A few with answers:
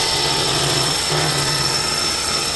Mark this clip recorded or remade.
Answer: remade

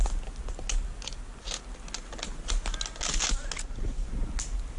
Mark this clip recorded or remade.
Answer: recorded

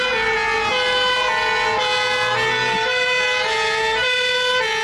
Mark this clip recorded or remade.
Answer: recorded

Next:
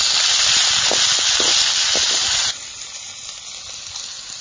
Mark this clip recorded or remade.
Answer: recorded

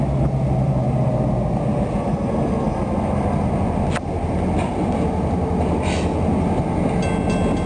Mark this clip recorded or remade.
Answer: recorded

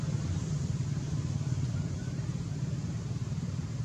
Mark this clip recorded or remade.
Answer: recorded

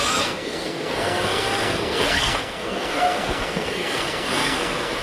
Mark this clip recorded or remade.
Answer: remade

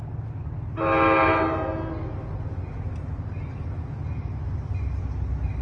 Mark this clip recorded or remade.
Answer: recorded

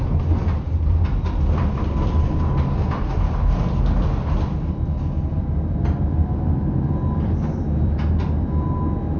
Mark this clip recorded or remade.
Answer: recorded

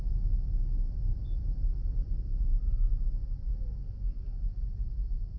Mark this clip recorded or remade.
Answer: recorded